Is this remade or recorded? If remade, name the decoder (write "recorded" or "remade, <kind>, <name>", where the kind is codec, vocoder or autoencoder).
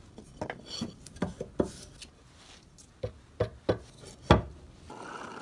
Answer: recorded